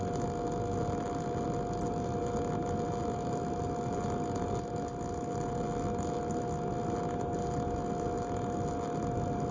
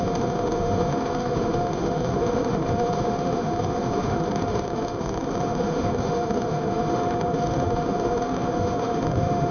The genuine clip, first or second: first